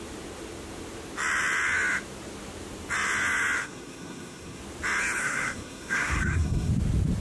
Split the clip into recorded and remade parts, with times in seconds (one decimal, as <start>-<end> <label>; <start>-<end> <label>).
0.0-3.6 recorded; 3.6-4.6 remade; 4.6-5.2 recorded; 5.2-6.7 remade; 6.7-7.2 recorded